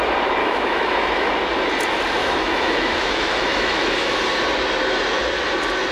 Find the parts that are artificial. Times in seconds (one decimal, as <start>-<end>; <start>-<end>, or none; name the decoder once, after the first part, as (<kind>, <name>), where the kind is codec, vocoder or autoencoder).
0.4-1.3 (autoencoder, DAC-VAE); 2.2-4.2